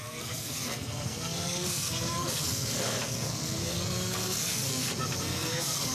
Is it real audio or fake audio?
fake